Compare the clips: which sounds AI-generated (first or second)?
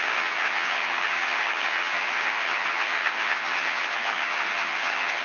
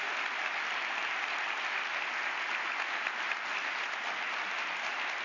first